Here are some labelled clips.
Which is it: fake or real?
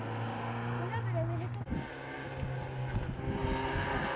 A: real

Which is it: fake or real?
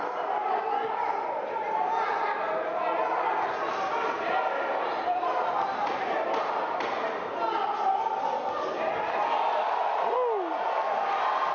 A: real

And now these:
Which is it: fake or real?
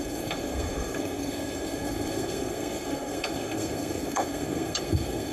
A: fake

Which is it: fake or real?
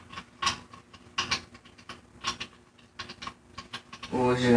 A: real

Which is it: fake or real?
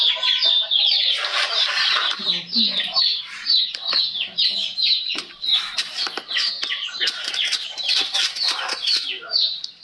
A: fake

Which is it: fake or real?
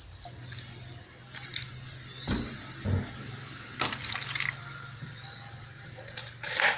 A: real